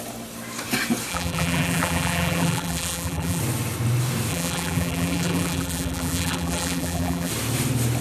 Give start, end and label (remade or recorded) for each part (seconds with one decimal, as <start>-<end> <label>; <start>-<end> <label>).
0.0-1.1 recorded; 1.1-3.4 remade; 3.4-4.3 recorded; 4.3-7.3 remade; 7.3-8.0 recorded